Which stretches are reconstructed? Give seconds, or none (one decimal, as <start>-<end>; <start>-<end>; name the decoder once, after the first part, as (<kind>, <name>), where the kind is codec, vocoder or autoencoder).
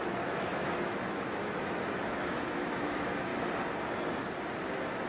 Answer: 0.0-3.3 (autoencoder, DAC-VAE)